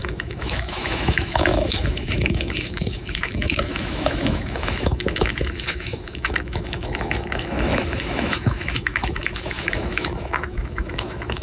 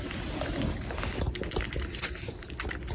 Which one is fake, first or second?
first